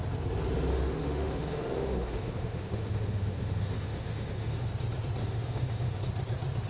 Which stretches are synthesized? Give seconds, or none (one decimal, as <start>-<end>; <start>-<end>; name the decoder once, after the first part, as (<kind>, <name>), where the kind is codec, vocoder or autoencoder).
0.7-4.7 (autoencoder, DAC-VAE); 5.2-6.0